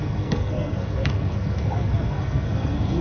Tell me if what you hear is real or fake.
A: fake